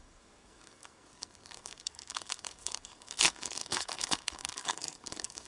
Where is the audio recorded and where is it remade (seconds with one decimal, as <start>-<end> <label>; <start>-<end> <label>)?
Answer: 0.0-5.5 remade